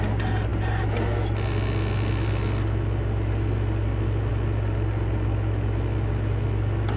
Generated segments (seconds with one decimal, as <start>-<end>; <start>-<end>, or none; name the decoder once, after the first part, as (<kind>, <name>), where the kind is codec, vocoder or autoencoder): none